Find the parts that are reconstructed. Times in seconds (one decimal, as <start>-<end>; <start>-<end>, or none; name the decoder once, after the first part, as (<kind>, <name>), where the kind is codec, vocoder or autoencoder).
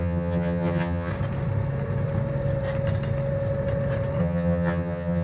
0.0-1.1 (vocoder, HiFi-GAN); 4.2-5.2